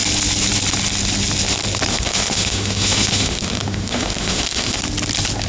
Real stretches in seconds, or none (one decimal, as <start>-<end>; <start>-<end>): 0.0-1.9; 4.8-5.5